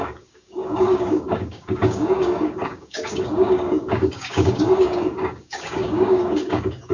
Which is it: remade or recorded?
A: remade